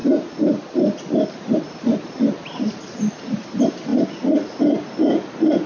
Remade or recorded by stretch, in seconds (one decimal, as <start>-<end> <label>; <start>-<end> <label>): 0.0-5.7 recorded